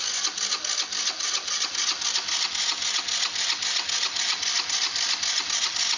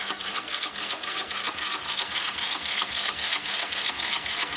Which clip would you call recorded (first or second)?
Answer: first